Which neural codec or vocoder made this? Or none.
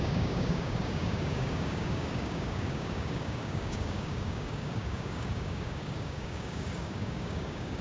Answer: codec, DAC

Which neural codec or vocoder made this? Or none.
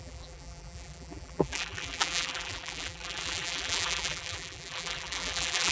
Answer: vocoder, BigVGAN v2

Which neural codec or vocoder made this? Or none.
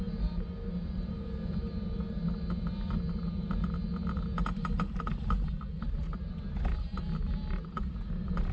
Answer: none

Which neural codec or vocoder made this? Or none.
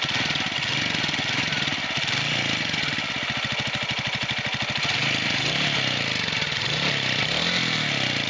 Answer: none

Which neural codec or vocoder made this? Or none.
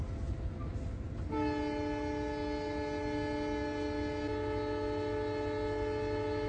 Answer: none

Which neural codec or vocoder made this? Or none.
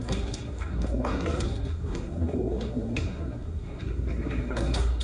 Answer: codec, SNAC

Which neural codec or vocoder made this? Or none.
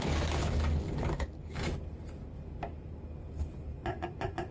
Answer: none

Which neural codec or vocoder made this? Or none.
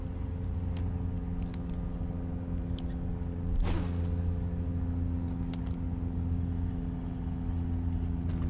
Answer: none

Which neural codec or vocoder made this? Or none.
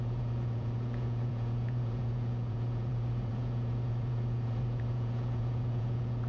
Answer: vocoder, Vocos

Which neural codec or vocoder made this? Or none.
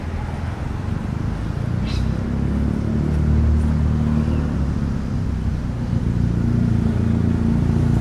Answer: none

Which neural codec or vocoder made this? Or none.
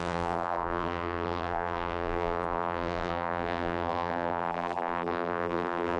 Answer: vocoder, BigVGAN v2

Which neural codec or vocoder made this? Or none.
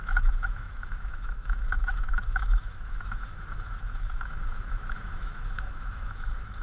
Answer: autoencoder, DAC-VAE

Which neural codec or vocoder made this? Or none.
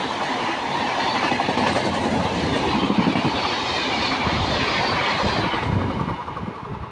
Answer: vocoder, BigVGAN v2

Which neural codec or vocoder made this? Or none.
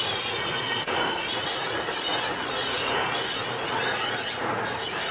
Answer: vocoder, Vocos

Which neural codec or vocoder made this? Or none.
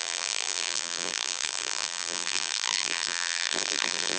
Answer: vocoder, BigVGAN v2